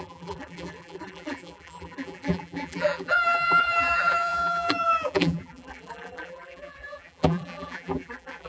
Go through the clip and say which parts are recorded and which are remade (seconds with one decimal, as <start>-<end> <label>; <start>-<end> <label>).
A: 0.0-8.5 remade